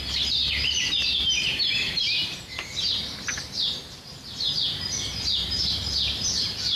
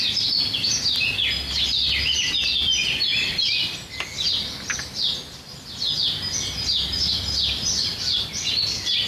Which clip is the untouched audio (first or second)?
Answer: second